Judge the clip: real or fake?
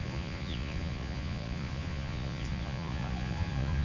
fake